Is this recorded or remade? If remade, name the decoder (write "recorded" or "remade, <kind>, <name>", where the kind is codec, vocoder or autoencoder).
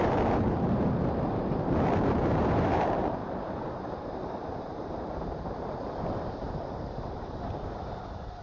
remade, vocoder, BigVGAN v2